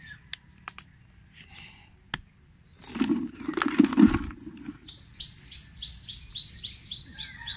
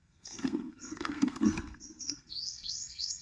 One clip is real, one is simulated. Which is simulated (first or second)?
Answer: second